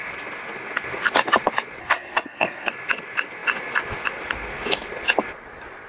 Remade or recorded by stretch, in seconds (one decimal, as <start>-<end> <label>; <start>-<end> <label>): 0.0-1.8 recorded; 1.8-2.7 remade; 2.7-5.9 recorded